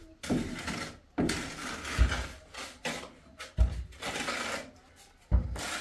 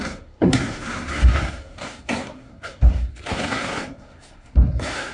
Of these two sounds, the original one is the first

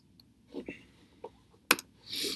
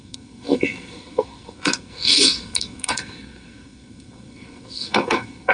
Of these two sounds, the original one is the first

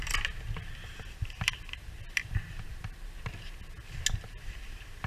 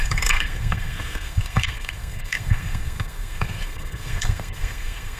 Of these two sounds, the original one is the first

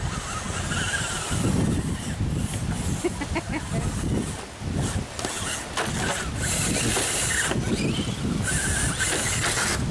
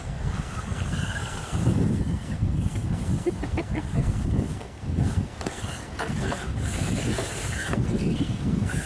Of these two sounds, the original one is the first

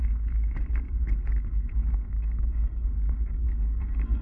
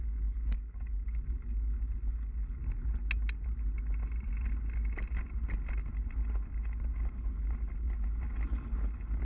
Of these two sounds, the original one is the second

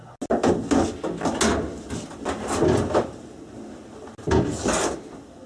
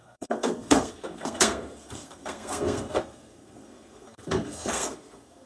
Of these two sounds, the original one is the first